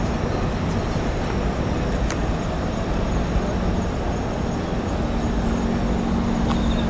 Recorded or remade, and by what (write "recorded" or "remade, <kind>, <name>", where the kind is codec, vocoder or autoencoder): recorded